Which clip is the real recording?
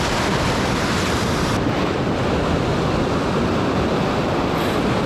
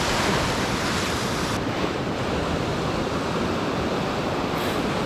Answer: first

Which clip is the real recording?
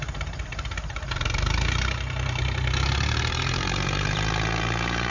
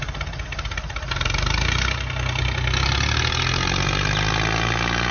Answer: second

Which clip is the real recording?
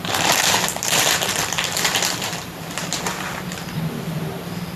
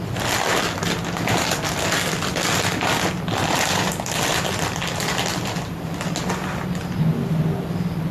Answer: second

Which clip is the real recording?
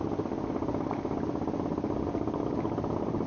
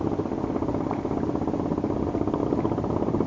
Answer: first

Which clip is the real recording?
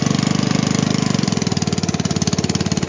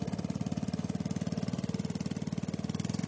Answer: second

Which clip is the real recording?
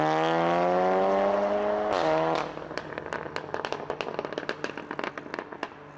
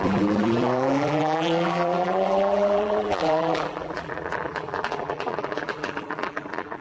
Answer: first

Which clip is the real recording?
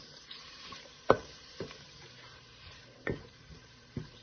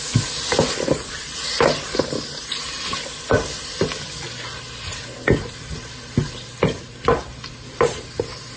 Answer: second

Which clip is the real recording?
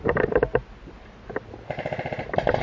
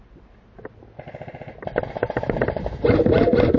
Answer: second